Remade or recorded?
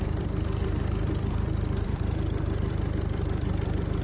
remade